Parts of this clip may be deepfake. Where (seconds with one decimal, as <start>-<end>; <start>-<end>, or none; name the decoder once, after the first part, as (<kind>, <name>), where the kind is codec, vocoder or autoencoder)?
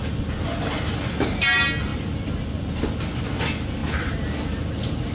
none